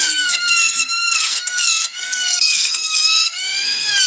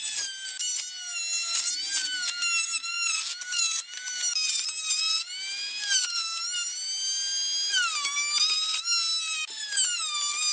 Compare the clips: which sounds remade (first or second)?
first